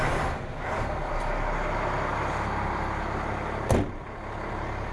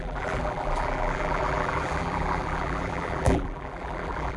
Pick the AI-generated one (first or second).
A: second